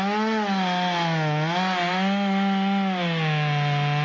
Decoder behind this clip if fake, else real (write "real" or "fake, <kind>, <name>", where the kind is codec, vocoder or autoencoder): real